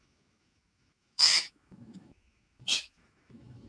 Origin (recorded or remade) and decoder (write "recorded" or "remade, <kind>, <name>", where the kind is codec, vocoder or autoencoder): remade, autoencoder, DAC-VAE